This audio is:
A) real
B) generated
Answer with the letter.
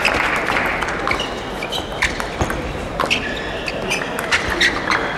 A